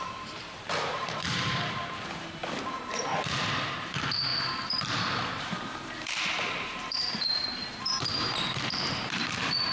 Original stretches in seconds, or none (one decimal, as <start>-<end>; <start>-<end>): 2.4-3.0; 4.3-4.9